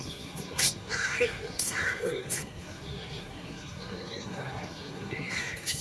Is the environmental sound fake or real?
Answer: fake